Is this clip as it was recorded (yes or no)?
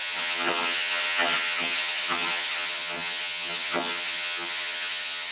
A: no